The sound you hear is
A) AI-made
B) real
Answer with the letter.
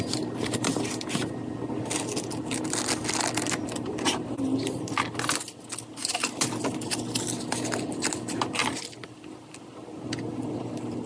B